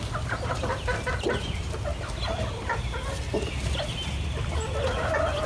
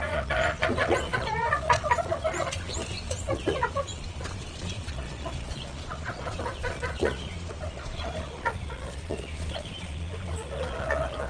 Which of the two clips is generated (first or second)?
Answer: second